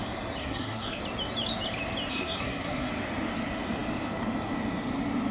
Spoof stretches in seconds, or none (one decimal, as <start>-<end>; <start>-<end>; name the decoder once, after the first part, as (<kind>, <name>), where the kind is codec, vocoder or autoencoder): 0.4-1.0 (codec, SNAC); 2.1-2.9